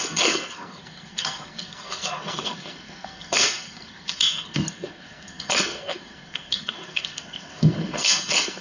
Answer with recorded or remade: remade